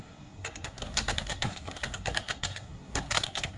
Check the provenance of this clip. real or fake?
fake